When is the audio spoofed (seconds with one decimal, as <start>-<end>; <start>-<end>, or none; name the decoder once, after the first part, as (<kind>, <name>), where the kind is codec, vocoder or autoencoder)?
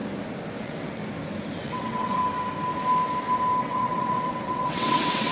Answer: 0.6-1.0 (vocoder, WaveNeXt); 1.6-2.2; 3.6-5.3